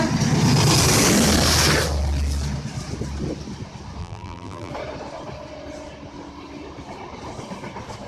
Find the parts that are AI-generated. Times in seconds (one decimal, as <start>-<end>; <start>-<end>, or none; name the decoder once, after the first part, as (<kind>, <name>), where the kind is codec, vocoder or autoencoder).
4.0-4.7 (vocoder, BigVGAN v2)